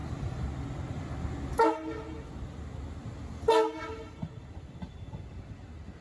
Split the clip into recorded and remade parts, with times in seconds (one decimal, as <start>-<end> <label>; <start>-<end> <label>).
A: 0.0-0.5 remade; 0.5-3.9 recorded; 3.9-4.6 remade; 4.6-6.0 recorded